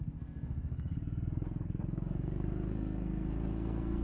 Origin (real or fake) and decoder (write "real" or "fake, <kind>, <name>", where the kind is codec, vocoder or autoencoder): fake, codec, SNAC